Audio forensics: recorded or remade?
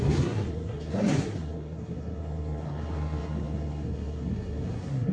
remade